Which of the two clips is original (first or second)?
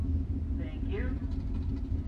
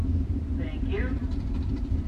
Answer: first